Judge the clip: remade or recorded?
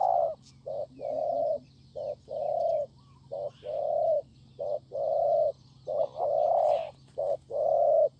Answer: recorded